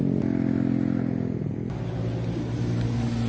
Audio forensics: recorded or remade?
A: recorded